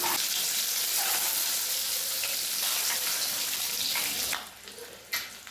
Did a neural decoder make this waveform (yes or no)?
no